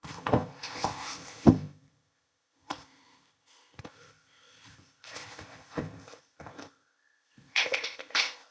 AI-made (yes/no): yes